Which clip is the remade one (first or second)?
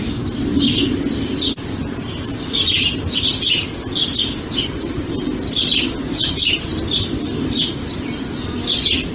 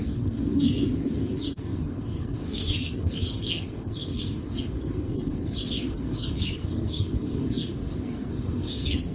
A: second